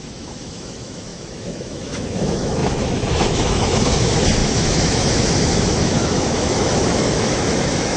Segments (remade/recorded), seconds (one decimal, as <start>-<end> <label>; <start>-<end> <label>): 0.0-8.0 remade